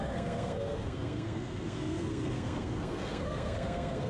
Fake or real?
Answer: fake